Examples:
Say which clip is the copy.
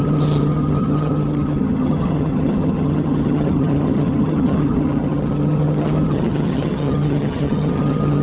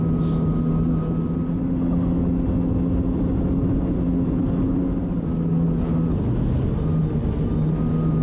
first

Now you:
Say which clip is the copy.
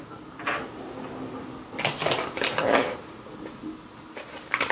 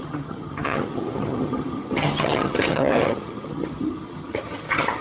second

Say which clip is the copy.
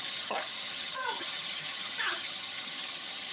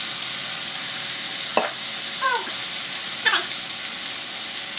first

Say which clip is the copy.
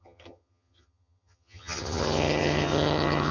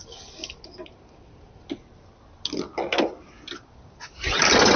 first